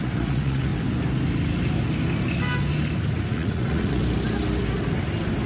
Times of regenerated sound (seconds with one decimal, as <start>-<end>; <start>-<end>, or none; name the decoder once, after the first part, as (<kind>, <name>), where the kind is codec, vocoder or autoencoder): 0.0-0.7 (vocoder, Vocos); 3.3-4.0